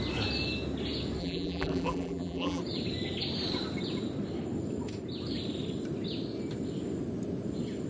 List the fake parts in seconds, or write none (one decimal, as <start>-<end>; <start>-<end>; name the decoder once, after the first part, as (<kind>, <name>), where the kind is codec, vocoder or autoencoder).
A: 1.2-2.6 (vocoder, BigVGAN v2)